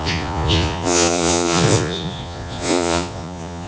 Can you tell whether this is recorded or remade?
remade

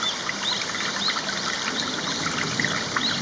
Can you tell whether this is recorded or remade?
recorded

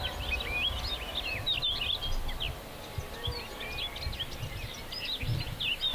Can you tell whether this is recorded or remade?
recorded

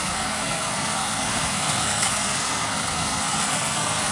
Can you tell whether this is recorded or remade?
remade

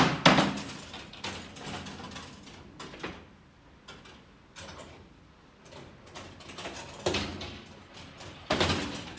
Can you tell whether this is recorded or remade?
recorded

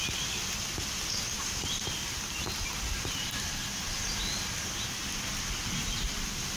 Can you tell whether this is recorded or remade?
recorded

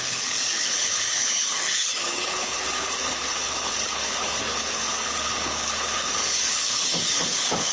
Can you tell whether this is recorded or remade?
remade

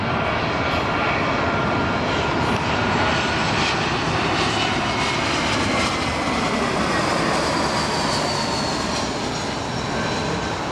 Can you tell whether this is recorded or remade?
recorded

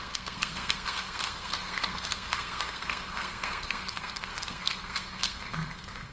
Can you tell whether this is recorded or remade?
remade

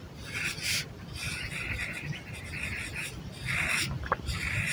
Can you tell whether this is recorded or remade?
recorded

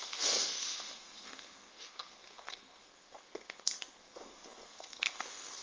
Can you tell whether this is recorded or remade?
remade